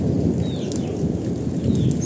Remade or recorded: recorded